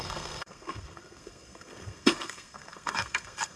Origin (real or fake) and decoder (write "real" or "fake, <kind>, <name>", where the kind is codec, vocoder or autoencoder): fake, codec, SNAC